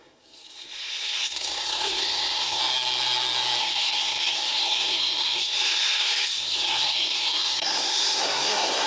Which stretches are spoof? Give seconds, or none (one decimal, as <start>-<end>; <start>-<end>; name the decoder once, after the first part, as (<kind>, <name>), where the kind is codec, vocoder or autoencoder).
0.0-2.6 (codec, SNAC); 3.6-8.9